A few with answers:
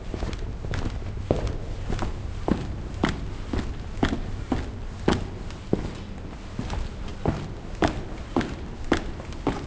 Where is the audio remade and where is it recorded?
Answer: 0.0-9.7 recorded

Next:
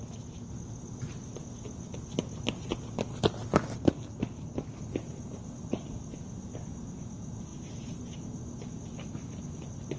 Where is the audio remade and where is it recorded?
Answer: 0.0-10.0 recorded

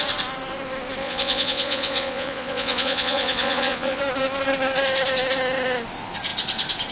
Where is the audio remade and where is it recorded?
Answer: 0.0-1.0 recorded; 1.0-4.0 remade; 4.0-6.9 recorded

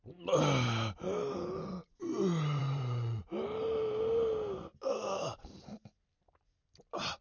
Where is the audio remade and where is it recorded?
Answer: 0.0-2.6 recorded; 2.6-3.2 remade; 3.2-7.2 recorded

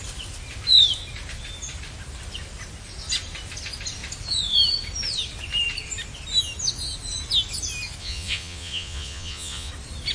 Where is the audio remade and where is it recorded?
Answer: 0.0-8.0 recorded; 8.0-9.7 remade; 9.7-10.1 recorded

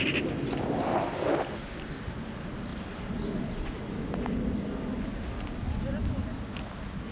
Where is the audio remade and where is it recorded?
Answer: 0.0-7.1 recorded